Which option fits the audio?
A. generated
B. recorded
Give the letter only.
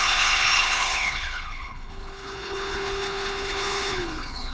A